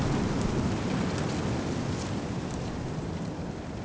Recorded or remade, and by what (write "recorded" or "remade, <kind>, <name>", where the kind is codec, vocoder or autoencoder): recorded